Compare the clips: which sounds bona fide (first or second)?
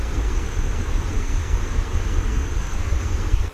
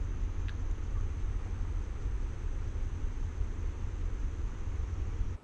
second